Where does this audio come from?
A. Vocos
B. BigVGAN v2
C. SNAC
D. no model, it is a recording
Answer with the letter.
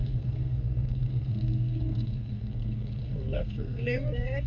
C